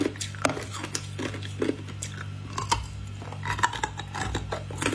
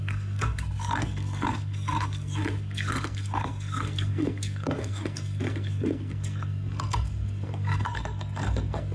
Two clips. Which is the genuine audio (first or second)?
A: first